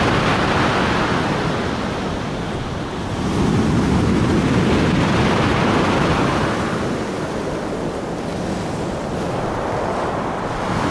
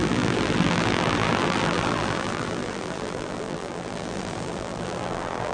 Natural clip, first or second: first